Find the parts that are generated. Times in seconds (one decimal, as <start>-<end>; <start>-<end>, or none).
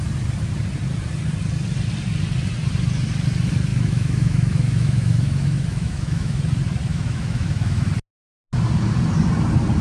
3.7-6.4; 6.9-7.9